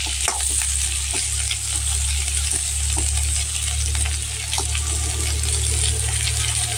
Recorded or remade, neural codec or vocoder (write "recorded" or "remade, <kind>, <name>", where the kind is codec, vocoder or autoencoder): recorded